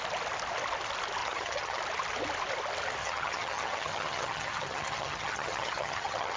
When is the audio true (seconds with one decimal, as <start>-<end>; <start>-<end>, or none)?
0.0-1.2; 1.8-3.0